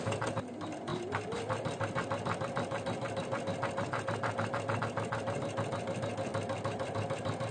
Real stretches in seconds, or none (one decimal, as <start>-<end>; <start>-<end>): 0.0-7.5